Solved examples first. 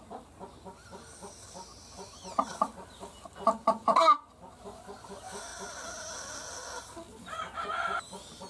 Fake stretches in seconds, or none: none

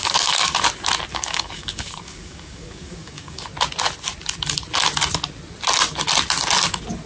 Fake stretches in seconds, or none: 0.0-0.5; 1.1-3.5

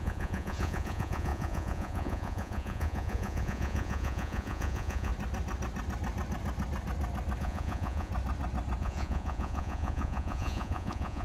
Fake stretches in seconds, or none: 0.0-5.1; 7.4-8.1; 8.8-11.2

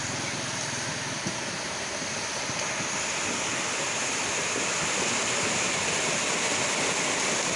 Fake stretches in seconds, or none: none

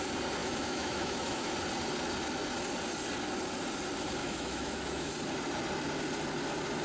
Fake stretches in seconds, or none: 0.4-1.5; 4.2-5.1